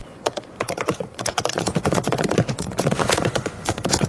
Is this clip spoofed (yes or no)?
yes